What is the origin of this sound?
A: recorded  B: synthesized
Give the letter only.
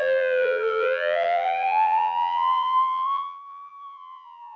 B